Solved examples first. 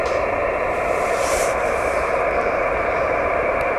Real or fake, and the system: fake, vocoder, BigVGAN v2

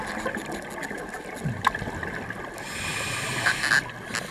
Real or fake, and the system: real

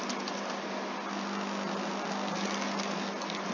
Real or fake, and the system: real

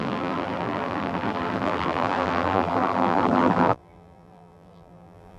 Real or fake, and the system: fake, vocoder, BigVGAN v2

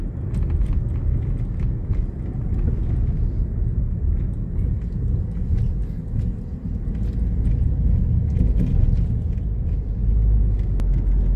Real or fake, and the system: real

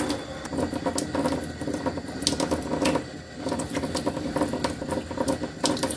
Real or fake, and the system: real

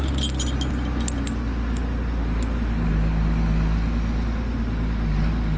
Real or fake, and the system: real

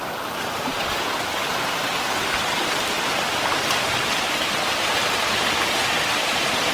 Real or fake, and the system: real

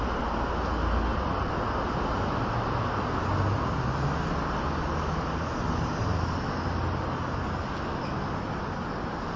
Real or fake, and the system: real